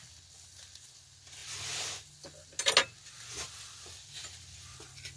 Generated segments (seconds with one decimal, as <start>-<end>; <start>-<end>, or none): none